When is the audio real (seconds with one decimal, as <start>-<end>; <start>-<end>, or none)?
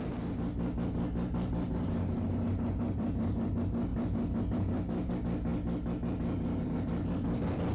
0.0-1.7; 3.5-3.9; 5.1-7.7